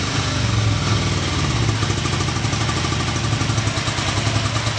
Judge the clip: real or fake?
real